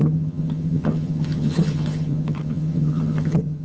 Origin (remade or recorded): remade